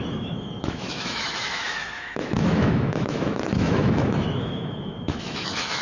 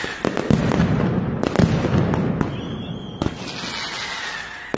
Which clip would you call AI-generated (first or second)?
first